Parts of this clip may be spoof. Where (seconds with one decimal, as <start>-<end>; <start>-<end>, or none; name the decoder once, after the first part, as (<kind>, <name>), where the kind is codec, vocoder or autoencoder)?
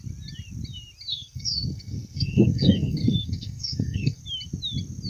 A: 1.1-4.2 (codec, SNAC)